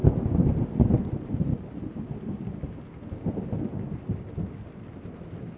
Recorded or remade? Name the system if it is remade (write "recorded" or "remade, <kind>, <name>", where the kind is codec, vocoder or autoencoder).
recorded